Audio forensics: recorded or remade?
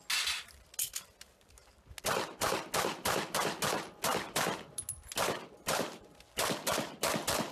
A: recorded